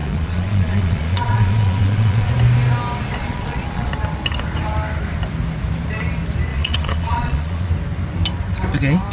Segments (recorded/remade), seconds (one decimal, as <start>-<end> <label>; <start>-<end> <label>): 0.0-2.3 remade; 2.3-3.2 recorded; 3.2-3.9 remade; 3.9-6.5 recorded; 6.5-7.7 remade; 7.7-9.1 recorded